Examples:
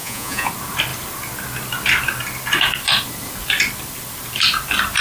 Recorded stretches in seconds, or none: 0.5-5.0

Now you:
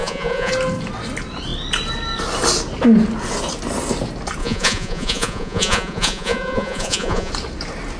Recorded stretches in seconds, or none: 0.5-4.4; 7.3-8.0

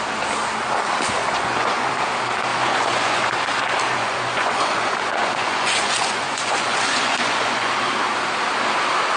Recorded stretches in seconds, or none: 0.0-1.2; 1.9-2.5; 3.3-4.0; 7.7-9.2

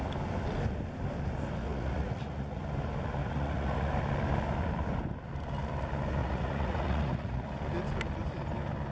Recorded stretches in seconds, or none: 0.0-1.6; 2.6-3.2; 3.9-6.2; 7.5-8.9

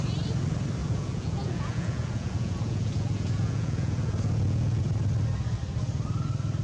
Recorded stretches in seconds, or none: 0.0-0.8; 4.8-6.6

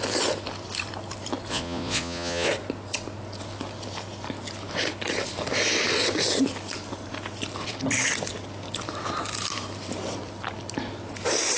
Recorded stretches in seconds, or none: 0.0-1.5; 2.5-11.6

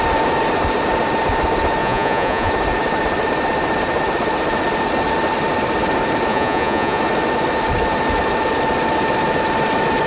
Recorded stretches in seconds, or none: 0.0-1.8; 2.5-6.3; 7.0-10.1

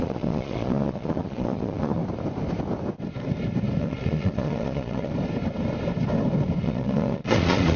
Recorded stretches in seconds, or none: 2.0-3.8; 5.1-6.6